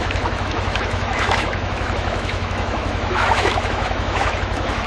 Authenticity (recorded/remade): remade